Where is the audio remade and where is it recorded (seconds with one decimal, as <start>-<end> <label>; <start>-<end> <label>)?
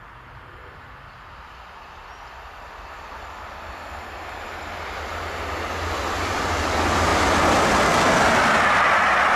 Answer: 0.0-9.4 recorded